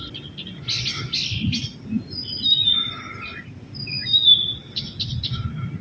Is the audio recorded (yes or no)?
yes